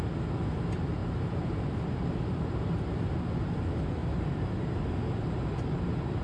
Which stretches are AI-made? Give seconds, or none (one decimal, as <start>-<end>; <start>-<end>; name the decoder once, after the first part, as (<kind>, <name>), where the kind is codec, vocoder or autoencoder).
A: 1.0-3.1 (vocoder, BigVGAN v2); 4.0-5.7